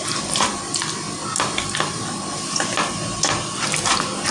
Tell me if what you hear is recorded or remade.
recorded